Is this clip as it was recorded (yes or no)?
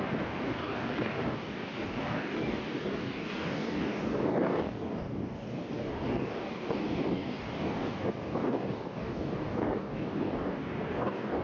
no